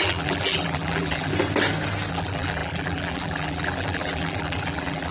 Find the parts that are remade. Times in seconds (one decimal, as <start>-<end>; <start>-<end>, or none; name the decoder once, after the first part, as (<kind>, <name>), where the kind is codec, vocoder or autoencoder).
0.0-1.3 (vocoder, BigVGAN v2); 2.1-5.1